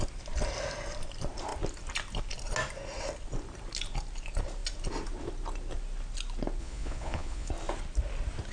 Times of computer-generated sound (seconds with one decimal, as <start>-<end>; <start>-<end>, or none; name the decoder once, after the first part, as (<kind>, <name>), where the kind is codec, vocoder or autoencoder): 6.6-7.5 (vocoder, Vocos)